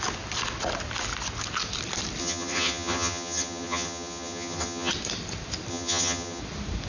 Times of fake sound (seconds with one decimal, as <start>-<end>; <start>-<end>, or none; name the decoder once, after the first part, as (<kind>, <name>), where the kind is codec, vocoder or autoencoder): 2.2-4.9 (vocoder, HiFi-GAN); 5.7-6.4